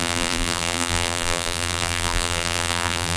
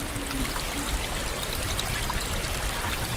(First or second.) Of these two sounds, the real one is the second